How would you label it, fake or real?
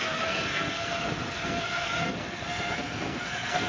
fake